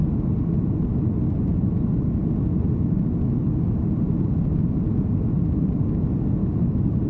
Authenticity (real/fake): real